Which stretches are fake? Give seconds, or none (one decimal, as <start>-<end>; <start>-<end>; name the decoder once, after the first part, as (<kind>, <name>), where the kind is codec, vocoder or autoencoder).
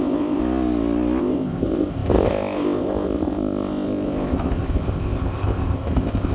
0.0-0.4 (codec, ZipCodec); 1.2-6.3